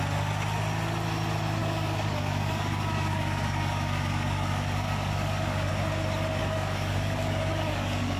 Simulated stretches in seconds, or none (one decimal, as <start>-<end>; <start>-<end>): 1.6-5.7; 6.4-8.2